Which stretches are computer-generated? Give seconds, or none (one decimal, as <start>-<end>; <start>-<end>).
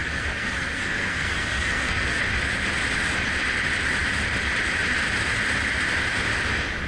0.0-2.2